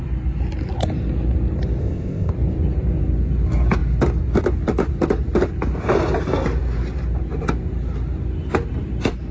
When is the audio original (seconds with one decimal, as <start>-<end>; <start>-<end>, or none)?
0.0-1.8; 2.3-9.3